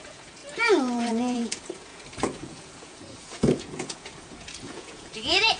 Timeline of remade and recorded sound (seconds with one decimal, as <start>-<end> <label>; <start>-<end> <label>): 0.0-5.6 remade